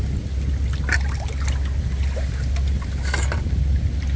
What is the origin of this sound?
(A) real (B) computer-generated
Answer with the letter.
A